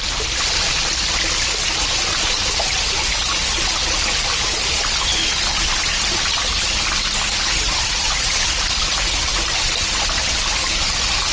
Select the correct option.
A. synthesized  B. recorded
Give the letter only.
B